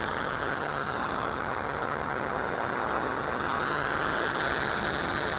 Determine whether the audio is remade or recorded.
remade